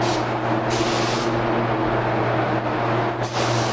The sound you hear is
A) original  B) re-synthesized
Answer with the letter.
A